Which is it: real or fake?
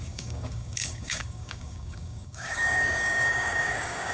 fake